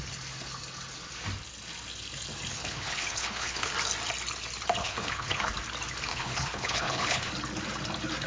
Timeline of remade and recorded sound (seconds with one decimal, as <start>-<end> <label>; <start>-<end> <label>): 0.0-2.5 recorded; 2.5-3.7 remade; 3.7-4.8 recorded; 4.8-5.5 remade; 5.5-6.1 recorded; 6.1-7.3 remade; 7.3-8.3 recorded